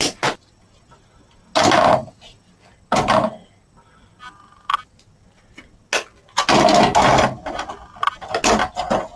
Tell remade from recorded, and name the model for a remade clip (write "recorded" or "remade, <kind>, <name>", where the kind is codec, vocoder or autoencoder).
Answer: recorded